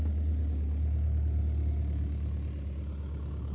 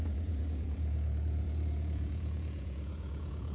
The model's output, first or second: second